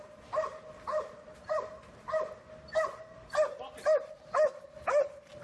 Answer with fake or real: real